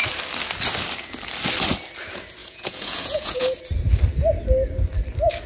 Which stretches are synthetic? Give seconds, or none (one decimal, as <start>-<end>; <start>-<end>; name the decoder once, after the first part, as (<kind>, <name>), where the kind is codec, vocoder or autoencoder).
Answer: 2.4-3.6 (vocoder, Vocos)